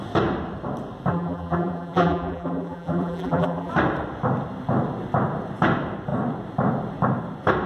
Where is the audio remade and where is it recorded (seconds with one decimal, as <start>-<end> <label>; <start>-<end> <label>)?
0.0-1.1 recorded; 1.1-3.7 remade; 3.7-7.7 recorded

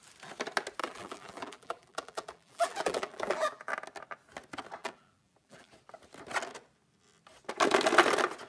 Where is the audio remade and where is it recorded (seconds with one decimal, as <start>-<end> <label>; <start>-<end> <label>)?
0.0-0.8 recorded; 0.8-3.7 remade; 3.7-4.8 recorded; 4.8-5.7 remade; 5.7-8.5 recorded

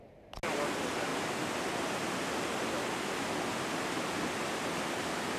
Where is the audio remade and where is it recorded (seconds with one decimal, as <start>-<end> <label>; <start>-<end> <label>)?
0.0-5.4 recorded